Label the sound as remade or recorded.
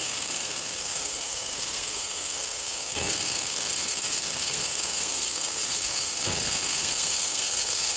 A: remade